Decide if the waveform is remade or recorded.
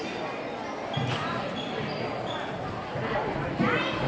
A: recorded